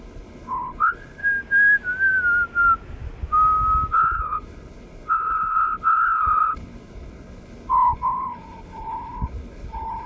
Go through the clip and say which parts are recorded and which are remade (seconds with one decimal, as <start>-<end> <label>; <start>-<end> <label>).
0.0-1.2 remade; 1.2-3.9 recorded; 3.9-10.1 remade